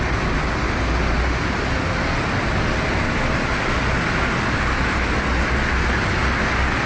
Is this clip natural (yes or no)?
yes